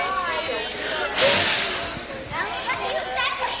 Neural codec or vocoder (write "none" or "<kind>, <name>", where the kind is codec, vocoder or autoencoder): none